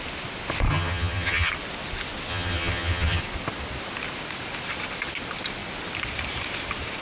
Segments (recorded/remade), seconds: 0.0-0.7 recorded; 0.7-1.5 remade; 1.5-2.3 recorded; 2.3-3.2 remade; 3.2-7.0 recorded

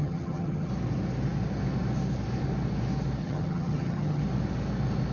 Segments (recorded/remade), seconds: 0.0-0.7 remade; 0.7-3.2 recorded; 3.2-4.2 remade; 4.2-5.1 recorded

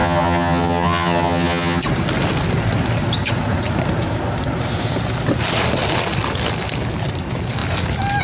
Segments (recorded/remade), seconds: 0.0-1.8 remade; 1.8-8.2 recorded

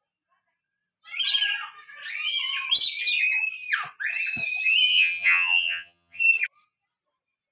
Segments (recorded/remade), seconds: 0.0-4.9 recorded; 4.9-6.2 remade; 6.2-7.5 recorded